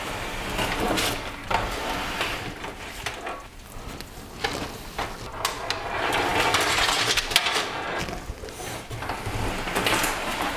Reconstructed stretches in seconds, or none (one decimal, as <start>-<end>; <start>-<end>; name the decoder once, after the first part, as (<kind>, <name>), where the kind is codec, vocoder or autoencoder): none